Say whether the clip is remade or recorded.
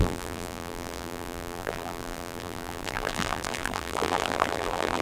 remade